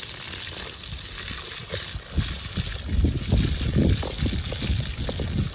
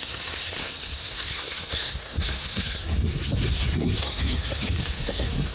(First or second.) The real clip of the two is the first